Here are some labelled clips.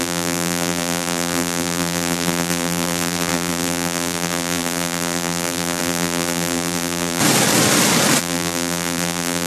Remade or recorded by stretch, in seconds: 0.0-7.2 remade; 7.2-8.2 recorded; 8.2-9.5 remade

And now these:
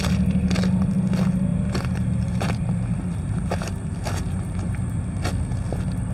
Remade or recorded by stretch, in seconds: 0.0-1.5 recorded; 1.5-5.2 remade; 5.2-6.1 recorded

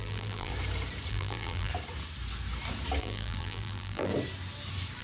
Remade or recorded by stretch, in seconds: 0.0-0.5 remade; 0.5-1.1 recorded; 1.1-1.7 remade; 1.7-3.0 recorded; 3.0-4.1 remade; 4.1-5.0 recorded

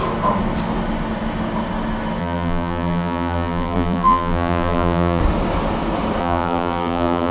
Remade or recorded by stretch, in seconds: 0.0-2.2 recorded; 2.2-5.2 remade; 5.2-6.2 recorded; 6.2-7.3 remade

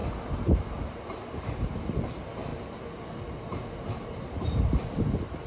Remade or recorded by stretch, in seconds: 0.0-0.9 recorded; 0.9-2.5 remade; 2.5-4.0 recorded; 4.0-5.5 remade

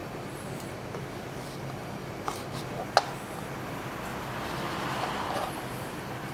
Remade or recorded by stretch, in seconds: 0.0-1.0 remade; 1.0-2.0 recorded; 2.0-2.6 remade; 2.6-4.1 recorded; 4.1-6.3 remade

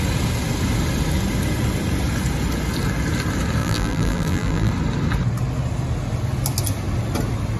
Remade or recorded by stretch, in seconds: 0.0-3.6 recorded; 3.6-4.7 remade; 4.7-7.6 recorded

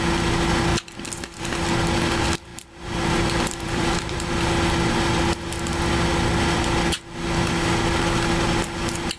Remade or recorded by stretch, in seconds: 0.0-2.5 recorded; 2.5-4.3 remade; 4.3-9.2 recorded